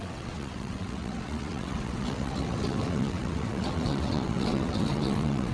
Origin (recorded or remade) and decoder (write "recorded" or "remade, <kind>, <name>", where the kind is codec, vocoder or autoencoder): remade, vocoder, WaveNeXt